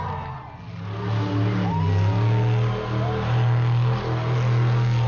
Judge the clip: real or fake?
real